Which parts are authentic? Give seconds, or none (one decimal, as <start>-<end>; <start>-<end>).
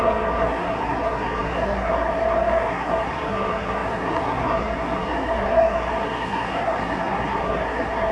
none